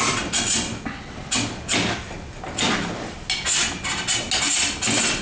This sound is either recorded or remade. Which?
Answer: recorded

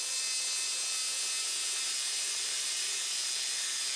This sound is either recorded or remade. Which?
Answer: recorded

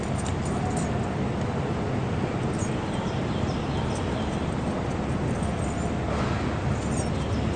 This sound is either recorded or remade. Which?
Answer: recorded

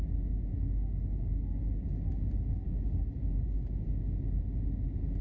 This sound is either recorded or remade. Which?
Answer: recorded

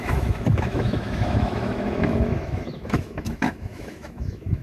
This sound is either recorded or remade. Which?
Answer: remade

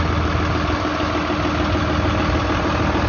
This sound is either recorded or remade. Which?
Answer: recorded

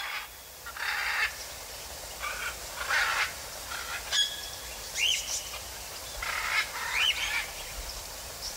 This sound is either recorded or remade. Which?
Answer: recorded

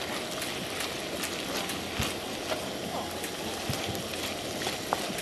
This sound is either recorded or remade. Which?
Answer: recorded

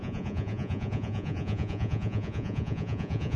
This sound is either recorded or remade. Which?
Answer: remade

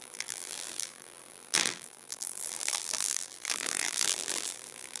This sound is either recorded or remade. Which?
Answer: remade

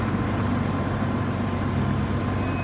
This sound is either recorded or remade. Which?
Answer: recorded